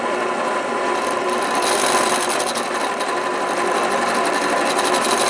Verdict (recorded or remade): recorded